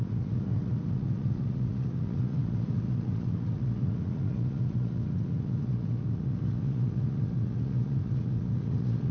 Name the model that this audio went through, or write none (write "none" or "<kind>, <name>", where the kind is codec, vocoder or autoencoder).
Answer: vocoder, Vocos